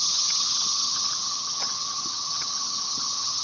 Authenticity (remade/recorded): remade